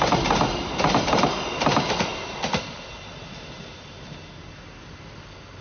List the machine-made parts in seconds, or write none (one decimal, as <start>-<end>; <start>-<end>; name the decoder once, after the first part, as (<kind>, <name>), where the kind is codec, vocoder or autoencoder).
none